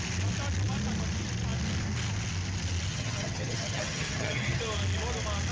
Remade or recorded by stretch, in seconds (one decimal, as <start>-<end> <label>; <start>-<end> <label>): 0.0-2.9 recorded; 2.9-4.6 remade; 4.6-5.5 recorded

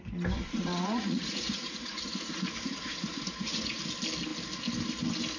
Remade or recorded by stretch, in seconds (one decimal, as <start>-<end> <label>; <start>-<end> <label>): 0.0-0.6 recorded; 0.6-3.8 remade; 3.8-5.4 recorded

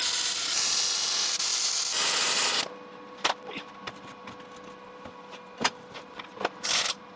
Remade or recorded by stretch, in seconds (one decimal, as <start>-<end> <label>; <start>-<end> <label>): 0.0-7.2 recorded

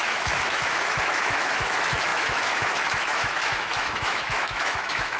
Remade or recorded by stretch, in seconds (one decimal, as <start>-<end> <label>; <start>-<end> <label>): 0.0-5.2 remade

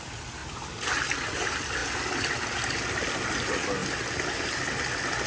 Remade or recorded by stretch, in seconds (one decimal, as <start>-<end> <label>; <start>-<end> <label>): 0.0-5.3 recorded

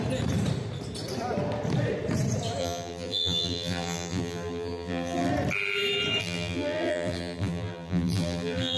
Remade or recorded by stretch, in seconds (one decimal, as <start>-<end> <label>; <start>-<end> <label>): 0.0-2.6 recorded; 2.6-5.3 remade; 5.3-6.2 recorded; 6.2-8.8 remade

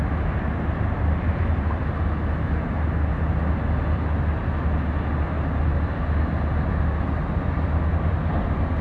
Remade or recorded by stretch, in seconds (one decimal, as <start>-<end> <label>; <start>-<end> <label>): 0.0-8.8 recorded